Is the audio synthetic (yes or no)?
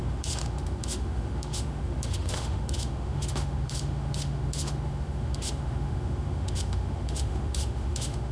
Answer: yes